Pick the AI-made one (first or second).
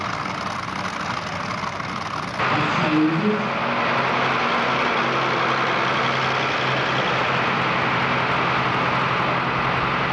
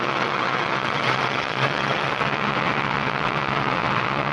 second